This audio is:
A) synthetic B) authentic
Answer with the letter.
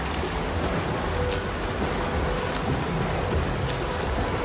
B